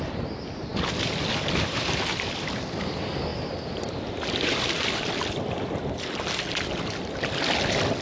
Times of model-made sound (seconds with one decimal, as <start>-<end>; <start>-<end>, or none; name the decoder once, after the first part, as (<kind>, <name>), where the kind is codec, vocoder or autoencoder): none